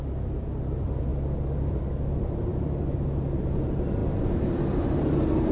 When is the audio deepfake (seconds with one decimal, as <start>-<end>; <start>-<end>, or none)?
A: none